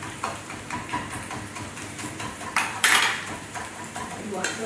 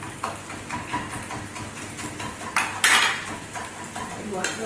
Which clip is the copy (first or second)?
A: first